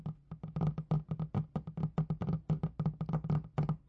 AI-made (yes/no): no